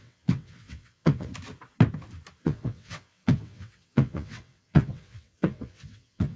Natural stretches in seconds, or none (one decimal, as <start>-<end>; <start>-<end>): 1.3-2.4

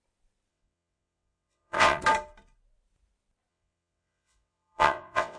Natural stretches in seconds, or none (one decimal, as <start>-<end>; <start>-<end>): 0.0-0.5; 2.0-3.5